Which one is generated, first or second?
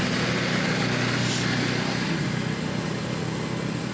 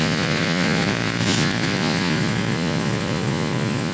second